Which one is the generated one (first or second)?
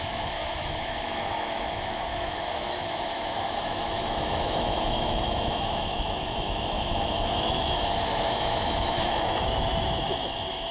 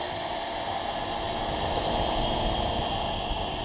first